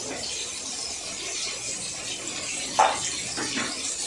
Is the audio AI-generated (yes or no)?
no